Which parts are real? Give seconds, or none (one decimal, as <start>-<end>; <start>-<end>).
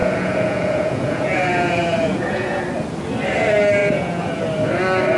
2.6-3.8; 4.4-5.2